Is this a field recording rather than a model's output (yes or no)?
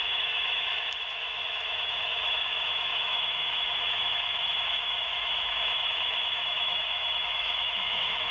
no